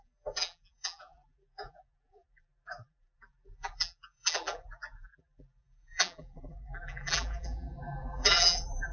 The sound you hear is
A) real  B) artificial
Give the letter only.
B